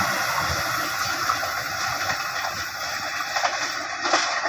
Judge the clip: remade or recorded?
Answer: recorded